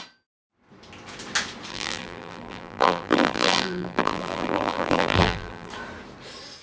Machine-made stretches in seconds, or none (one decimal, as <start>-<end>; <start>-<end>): 1.7-5.7